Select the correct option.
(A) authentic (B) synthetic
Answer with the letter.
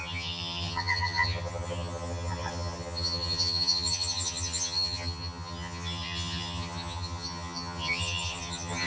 B